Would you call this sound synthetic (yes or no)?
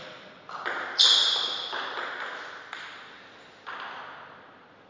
no